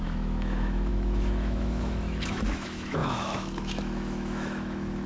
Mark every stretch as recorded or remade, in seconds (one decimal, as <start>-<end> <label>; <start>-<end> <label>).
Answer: 0.0-5.1 remade